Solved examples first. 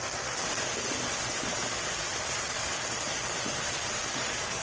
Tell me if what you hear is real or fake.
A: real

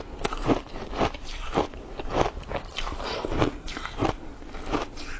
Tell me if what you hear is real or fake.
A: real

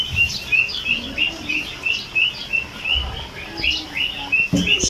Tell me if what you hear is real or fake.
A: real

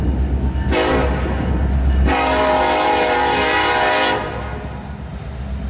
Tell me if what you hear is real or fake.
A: real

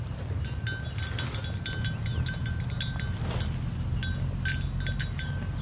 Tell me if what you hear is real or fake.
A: real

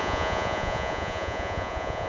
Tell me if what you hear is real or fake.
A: fake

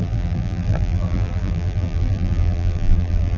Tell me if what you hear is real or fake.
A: fake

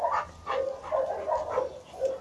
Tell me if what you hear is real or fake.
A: real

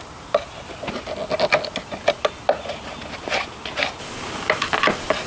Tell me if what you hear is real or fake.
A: real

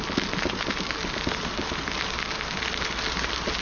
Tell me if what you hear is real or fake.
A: real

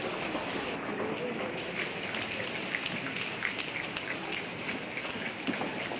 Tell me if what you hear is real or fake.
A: real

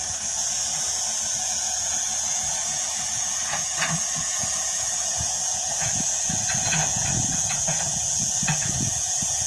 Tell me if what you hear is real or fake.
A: fake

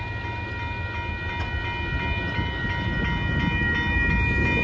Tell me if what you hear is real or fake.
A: real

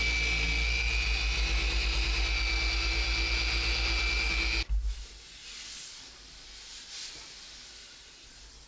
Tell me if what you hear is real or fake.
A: real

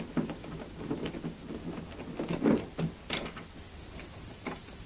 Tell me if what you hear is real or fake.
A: real